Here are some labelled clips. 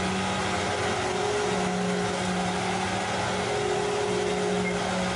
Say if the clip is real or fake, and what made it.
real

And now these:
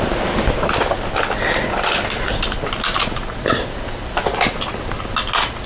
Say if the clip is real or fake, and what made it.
real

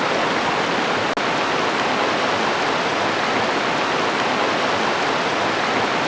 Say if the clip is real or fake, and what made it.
real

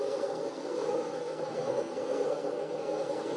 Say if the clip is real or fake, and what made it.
fake, codec, SNAC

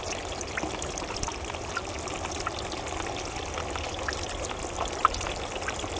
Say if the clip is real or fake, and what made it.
real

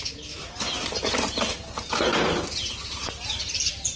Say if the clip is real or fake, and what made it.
real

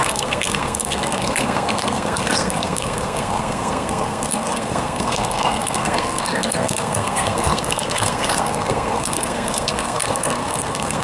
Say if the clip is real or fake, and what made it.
fake, codec, SNAC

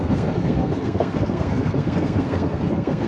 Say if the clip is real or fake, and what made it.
fake, codec, SNAC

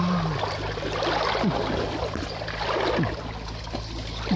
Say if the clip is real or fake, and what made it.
real